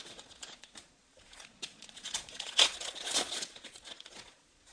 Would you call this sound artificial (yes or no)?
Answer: yes